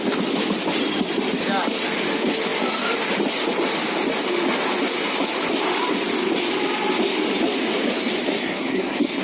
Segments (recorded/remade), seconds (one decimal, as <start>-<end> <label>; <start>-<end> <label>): 0.0-8.4 recorded; 8.4-9.2 remade